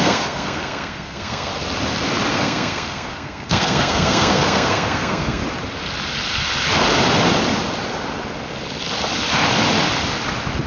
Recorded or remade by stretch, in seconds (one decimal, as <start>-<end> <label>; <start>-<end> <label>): 0.0-1.5 remade; 1.5-2.3 recorded; 2.3-5.4 remade; 5.4-10.7 recorded